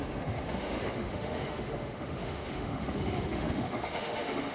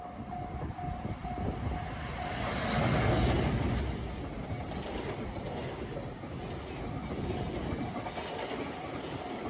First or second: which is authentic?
second